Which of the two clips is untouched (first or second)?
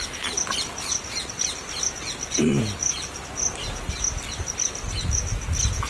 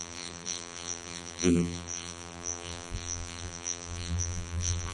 first